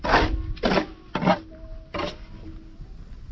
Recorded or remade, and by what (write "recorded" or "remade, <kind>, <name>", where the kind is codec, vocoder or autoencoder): recorded